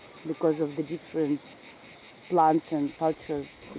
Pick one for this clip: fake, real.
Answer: real